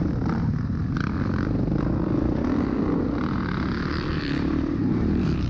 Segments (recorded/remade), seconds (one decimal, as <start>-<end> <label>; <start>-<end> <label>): 0.0-0.8 remade; 0.8-4.1 recorded; 4.1-5.5 remade